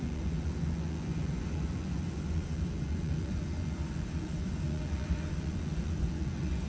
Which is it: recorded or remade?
remade